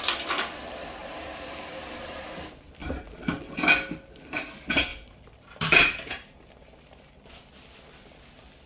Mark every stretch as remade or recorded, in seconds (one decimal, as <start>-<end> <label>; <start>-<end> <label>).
0.0-1.0 recorded; 1.0-2.2 remade; 2.2-4.9 recorded; 4.9-7.1 remade; 7.1-8.7 recorded